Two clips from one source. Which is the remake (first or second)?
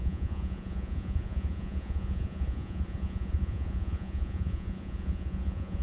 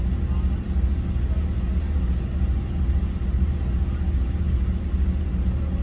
first